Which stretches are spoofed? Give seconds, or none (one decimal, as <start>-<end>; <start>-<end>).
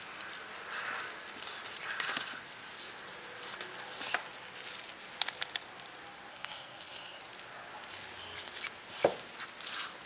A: 6.3-7.2